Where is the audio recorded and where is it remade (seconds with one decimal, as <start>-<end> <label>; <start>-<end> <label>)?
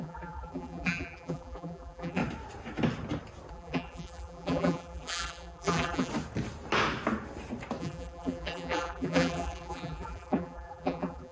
0.0-2.2 remade; 2.2-3.5 recorded; 3.5-6.1 remade; 6.1-7.8 recorded; 7.8-11.3 remade